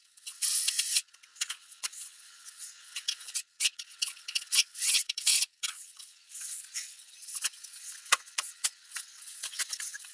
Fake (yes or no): yes